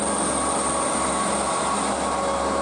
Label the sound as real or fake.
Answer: real